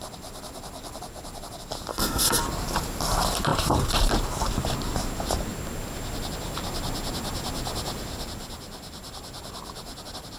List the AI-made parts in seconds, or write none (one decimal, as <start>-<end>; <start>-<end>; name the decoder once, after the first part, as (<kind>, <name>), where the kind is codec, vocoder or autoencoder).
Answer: 1.9-2.4 (codec, SNAC)